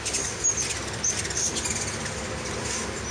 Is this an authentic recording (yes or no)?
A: yes